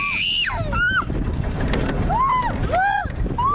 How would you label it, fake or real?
real